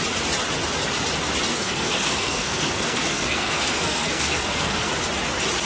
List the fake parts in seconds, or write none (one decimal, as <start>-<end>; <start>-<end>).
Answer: 1.5-4.9